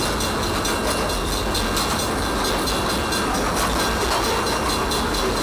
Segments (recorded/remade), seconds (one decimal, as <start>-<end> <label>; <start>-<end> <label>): 0.0-5.4 recorded